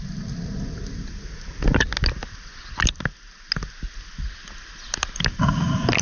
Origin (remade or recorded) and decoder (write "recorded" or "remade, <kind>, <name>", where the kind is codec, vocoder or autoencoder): recorded